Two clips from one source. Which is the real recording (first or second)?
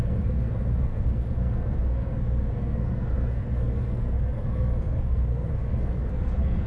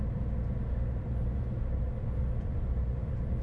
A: second